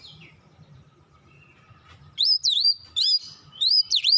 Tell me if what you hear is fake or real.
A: fake